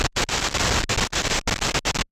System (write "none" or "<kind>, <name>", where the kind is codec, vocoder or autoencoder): none